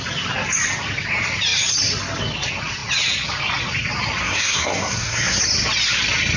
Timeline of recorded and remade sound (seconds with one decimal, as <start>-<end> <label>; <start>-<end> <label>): 0.0-4.2 recorded; 4.2-5.4 remade; 5.4-6.4 recorded